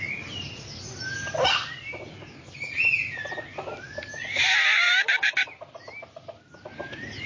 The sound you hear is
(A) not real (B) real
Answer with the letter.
B